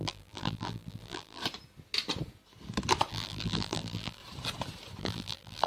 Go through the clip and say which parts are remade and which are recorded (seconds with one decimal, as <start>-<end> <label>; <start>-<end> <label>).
0.0-1.4 remade; 1.4-3.1 recorded; 3.1-4.2 remade; 4.2-5.0 recorded; 5.0-5.7 remade